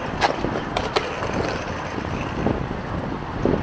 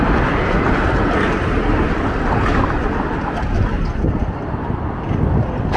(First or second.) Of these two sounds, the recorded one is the second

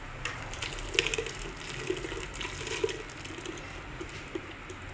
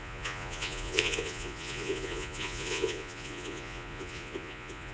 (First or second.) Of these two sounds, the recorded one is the first